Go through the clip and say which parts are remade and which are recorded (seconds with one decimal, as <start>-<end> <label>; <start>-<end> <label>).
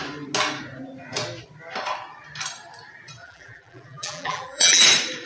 0.0-3.2 recorded; 3.2-4.8 remade; 4.8-5.3 recorded